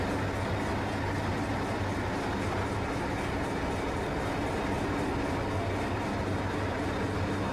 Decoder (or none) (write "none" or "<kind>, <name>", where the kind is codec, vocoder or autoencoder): none